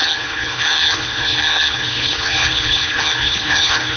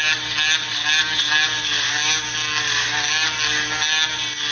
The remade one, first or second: first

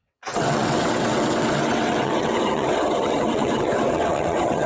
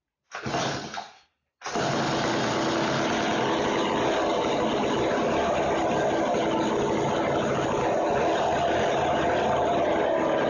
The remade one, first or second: first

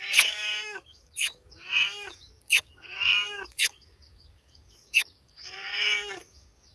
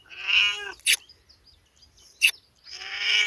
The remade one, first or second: first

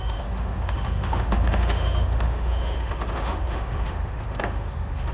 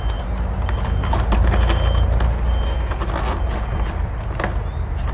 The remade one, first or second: first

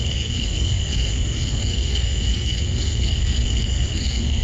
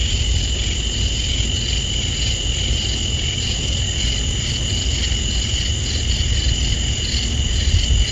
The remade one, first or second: first